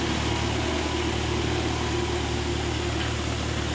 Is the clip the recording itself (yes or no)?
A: yes